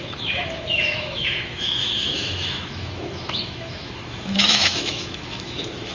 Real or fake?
fake